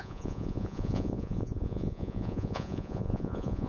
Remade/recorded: remade